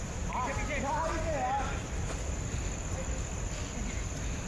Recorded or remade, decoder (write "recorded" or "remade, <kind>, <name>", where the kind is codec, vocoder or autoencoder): recorded